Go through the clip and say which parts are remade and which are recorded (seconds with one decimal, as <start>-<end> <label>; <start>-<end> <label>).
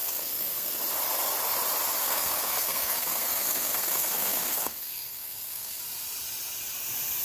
0.0-0.8 remade; 0.8-2.0 recorded; 2.0-5.8 remade; 5.8-7.2 recorded